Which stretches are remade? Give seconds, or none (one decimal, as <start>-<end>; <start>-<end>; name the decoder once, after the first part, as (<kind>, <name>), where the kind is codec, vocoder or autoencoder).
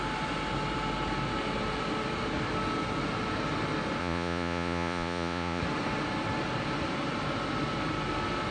4.0-5.6 (vocoder, Vocos)